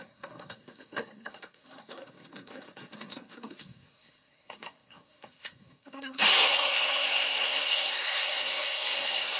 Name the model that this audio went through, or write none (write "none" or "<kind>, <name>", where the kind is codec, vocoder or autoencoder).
codec, SNAC